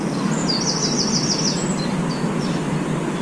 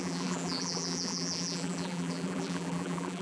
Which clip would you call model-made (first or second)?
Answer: second